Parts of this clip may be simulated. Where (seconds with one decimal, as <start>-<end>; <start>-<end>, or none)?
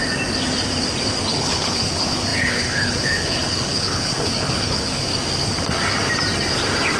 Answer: 1.3-5.1